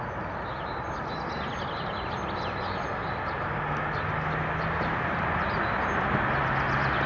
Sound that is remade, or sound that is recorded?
recorded